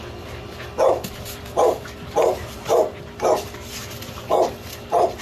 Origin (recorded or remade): recorded